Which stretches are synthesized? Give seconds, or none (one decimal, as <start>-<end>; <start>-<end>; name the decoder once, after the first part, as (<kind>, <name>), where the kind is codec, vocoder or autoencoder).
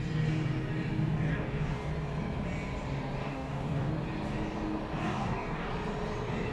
1.3-1.9 (codec, DAC); 3.2-3.9; 5.0-5.7